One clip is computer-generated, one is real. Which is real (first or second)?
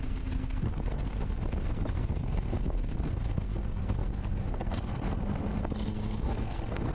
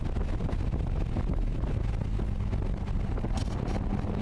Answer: second